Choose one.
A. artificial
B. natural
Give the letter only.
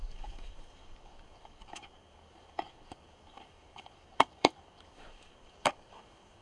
A